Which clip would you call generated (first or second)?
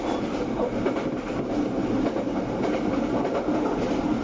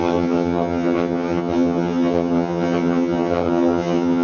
second